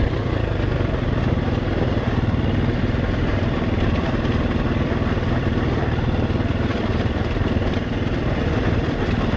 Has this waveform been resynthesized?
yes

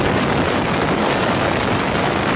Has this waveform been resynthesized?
no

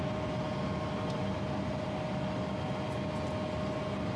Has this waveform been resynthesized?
no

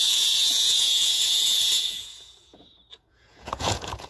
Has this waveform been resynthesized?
yes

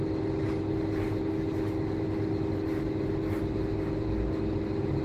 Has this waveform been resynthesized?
no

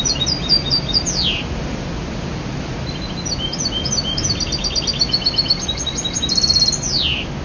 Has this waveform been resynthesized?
no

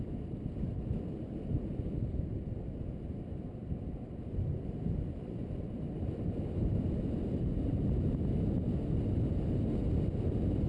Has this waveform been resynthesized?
no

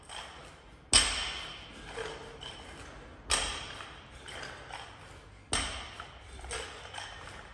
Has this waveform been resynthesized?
no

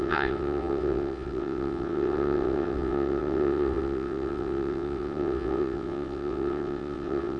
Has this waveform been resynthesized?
yes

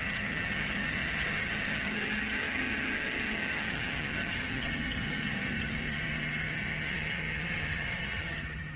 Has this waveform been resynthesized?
yes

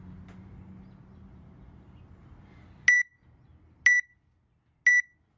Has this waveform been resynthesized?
no